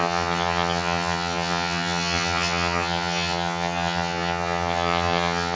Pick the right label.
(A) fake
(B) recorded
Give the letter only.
A